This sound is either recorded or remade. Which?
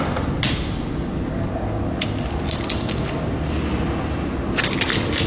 recorded